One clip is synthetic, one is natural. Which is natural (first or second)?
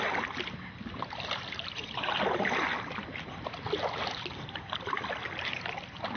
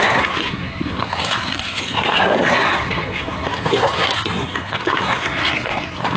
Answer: first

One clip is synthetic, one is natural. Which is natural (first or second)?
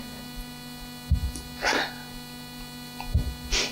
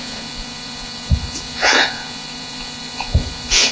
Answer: first